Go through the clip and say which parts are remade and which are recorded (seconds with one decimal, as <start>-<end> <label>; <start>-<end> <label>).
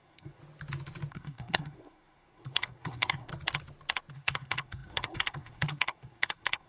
0.0-0.4 remade; 0.4-1.1 recorded; 1.1-3.3 remade; 3.3-4.1 recorded; 4.1-6.7 remade